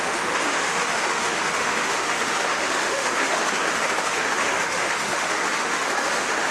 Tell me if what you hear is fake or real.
fake